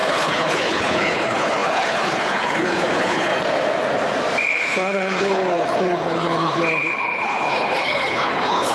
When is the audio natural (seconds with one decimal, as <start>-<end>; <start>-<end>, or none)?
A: 3.3-4.5